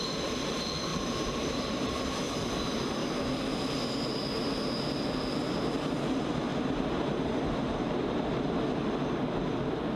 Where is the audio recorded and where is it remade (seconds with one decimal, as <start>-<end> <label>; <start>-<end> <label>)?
0.0-0.9 recorded; 0.9-1.6 remade; 1.6-6.5 recorded; 6.5-8.5 remade; 8.5-10.0 recorded